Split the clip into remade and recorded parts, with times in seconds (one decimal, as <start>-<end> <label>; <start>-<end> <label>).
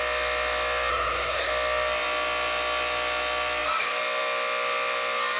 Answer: 0.0-0.9 recorded; 0.9-1.5 remade; 1.5-5.4 recorded